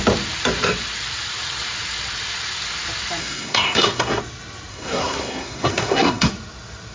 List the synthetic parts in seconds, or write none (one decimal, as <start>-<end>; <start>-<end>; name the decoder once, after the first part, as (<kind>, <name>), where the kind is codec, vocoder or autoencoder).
3.2-4.2 (codec, SNAC); 4.7-6.3